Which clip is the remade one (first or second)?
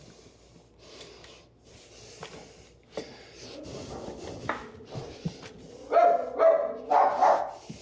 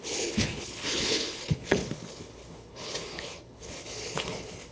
second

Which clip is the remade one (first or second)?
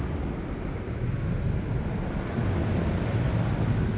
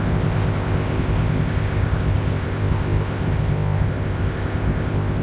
second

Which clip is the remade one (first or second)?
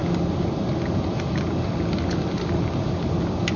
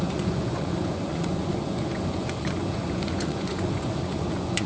second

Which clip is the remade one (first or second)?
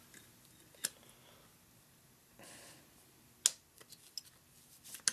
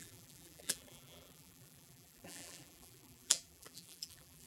second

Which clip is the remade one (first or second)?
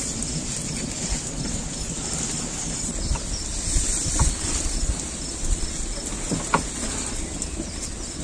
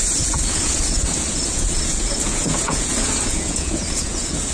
second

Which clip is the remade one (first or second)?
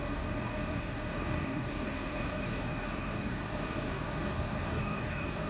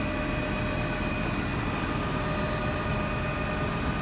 first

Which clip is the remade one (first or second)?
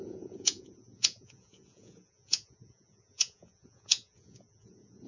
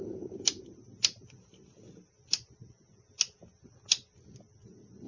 first